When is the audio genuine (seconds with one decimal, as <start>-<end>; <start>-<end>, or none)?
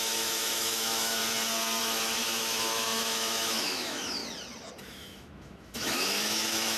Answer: 1.2-1.8; 4.2-4.8